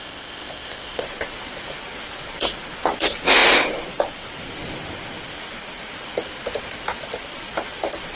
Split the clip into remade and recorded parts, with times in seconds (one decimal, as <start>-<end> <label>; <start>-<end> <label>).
0.0-1.0 remade; 1.0-8.2 recorded